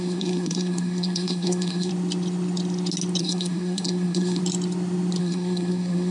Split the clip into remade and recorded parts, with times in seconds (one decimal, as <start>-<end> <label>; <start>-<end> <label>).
0.0-1.9 remade; 1.9-3.2 recorded; 3.2-4.4 remade; 4.4-5.2 recorded; 5.2-6.1 remade